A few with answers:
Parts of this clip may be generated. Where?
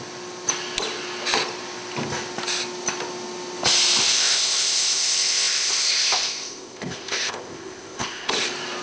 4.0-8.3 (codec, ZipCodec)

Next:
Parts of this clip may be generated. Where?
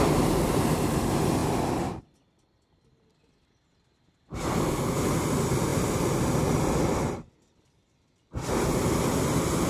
none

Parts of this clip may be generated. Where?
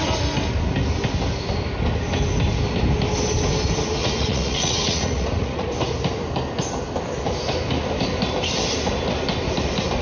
4.0-5.7 (vocoder, Vocos)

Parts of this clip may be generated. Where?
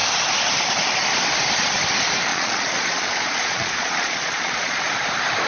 2.3-4.8 (vocoder, Vocos)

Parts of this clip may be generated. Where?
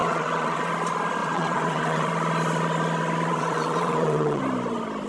0.0-0.7 (vocoder, WaveNeXt); 1.2-2.1; 3.3-4.4